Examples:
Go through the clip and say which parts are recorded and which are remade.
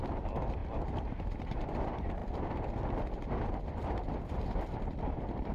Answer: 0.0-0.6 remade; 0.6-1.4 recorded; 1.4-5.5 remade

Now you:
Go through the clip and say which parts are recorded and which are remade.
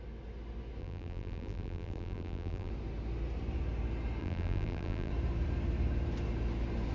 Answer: 0.0-0.8 recorded; 0.8-2.7 remade; 2.7-4.2 recorded; 4.2-5.1 remade; 5.1-6.9 recorded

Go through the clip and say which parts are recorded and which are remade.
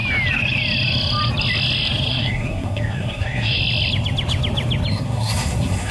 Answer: 0.0-2.1 recorded; 2.1-3.6 remade; 3.6-4.9 recorded; 4.9-5.9 remade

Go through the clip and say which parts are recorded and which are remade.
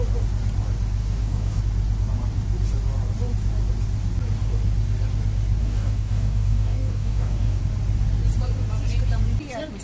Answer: 0.0-1.0 recorded; 1.0-1.6 remade; 1.6-5.6 recorded; 5.6-7.6 remade; 7.6-9.8 recorded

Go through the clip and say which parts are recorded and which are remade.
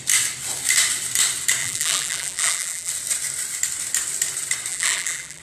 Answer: 0.0-1.6 recorded; 1.6-2.9 remade; 2.9-4.7 recorded; 4.7-5.4 remade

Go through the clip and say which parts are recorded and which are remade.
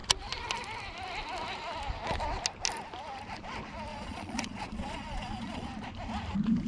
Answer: 0.0-3.9 recorded; 3.9-5.7 remade; 5.7-6.7 recorded